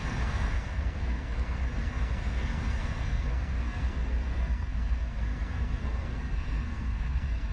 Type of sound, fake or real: fake